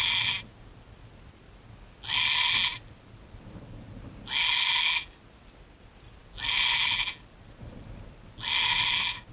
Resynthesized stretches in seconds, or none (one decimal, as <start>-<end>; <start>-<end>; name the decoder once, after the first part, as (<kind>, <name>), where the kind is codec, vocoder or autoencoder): none